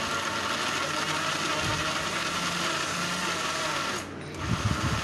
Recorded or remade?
recorded